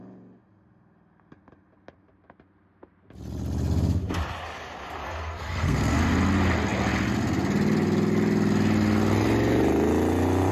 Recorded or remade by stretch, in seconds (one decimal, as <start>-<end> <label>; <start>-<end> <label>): 0.0-5.0 recorded; 5.0-6.0 remade; 6.0-10.5 recorded

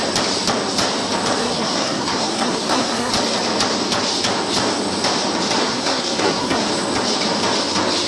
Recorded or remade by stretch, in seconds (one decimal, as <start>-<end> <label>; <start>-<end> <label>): 0.0-1.4 recorded; 1.4-3.1 remade; 3.1-5.6 recorded; 5.6-6.7 remade; 6.7-8.1 recorded

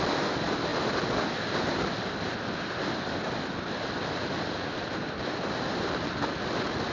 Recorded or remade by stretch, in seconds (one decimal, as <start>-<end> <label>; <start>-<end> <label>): 0.0-6.9 recorded

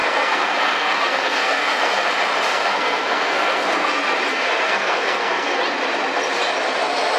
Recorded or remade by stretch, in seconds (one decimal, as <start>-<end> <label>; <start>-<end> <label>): 0.0-2.1 remade; 2.1-2.5 recorded; 2.5-3.9 remade; 3.9-4.3 recorded; 4.3-5.6 remade; 5.6-7.2 recorded

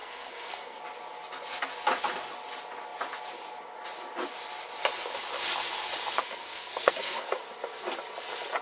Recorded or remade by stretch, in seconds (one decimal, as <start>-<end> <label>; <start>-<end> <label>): 0.0-0.8 remade; 0.8-6.2 recorded; 6.2-7.4 remade; 7.4-8.6 recorded

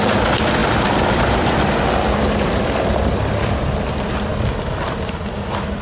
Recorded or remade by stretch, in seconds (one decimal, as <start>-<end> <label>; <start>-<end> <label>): 0.0-5.8 recorded

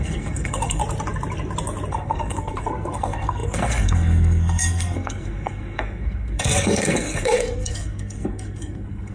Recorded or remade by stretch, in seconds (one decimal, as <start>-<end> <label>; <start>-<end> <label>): 0.0-0.8 remade; 0.8-1.9 recorded; 1.9-9.1 remade